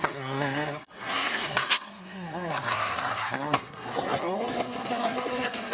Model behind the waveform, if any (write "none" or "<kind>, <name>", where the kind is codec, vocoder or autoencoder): codec, SNAC